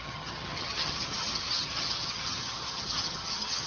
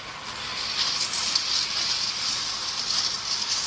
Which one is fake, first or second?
first